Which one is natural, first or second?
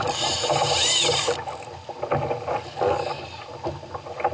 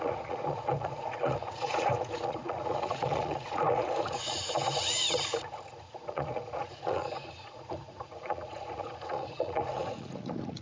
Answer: first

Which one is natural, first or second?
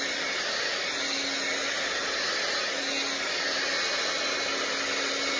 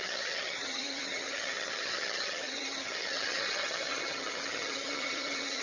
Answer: first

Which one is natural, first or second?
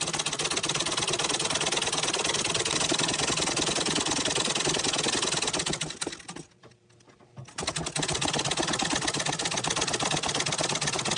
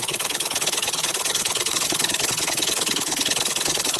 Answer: first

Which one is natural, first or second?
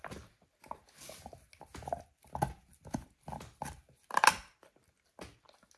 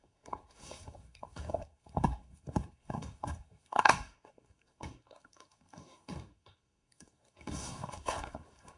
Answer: first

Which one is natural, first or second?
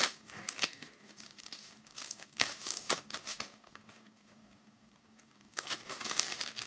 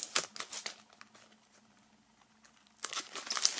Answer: second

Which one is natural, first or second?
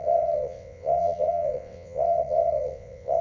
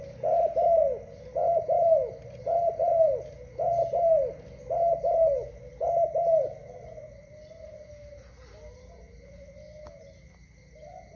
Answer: second